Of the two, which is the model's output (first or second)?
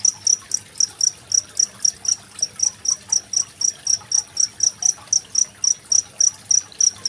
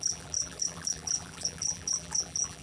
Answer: second